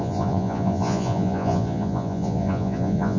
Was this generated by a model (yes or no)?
yes